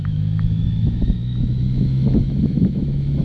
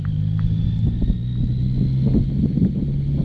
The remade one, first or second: first